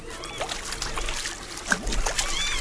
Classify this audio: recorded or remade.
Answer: recorded